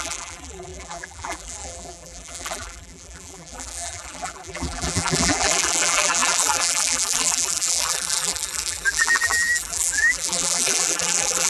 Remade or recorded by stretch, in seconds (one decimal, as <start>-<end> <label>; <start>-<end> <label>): 0.0-11.5 remade